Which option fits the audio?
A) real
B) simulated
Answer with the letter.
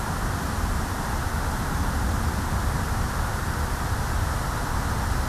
A